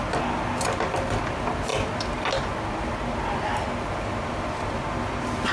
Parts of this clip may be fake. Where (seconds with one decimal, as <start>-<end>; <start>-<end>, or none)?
none

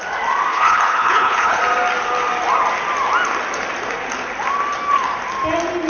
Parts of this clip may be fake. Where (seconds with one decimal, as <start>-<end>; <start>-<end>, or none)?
0.5-1.6